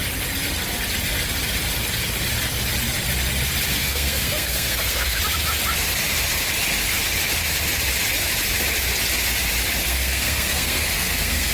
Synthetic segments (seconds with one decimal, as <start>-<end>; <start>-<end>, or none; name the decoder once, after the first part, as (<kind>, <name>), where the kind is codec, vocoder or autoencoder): 3.8-5.2 (codec, SNAC); 9.8-11.5